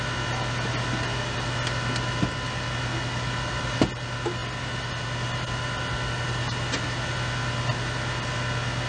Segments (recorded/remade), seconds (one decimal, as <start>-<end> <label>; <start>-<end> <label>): 0.0-8.9 recorded